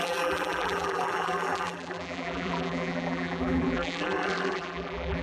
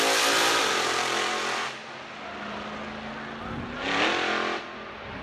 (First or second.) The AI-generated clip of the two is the first